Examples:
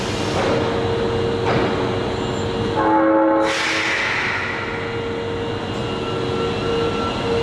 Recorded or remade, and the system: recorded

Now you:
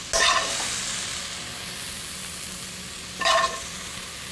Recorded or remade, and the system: recorded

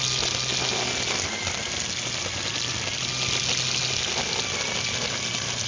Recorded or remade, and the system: recorded